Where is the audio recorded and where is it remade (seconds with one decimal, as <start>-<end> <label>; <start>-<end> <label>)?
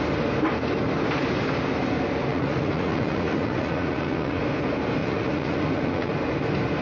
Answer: 0.0-2.3 recorded; 2.3-4.4 remade; 4.4-5.0 recorded; 5.0-6.1 remade; 6.1-6.8 recorded